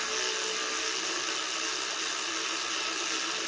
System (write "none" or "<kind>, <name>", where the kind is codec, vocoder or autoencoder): none